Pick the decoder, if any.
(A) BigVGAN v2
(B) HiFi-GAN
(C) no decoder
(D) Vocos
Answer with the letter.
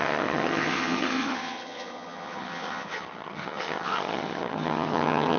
B